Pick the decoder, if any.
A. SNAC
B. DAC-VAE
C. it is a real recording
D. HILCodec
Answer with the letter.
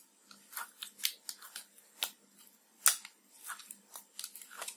C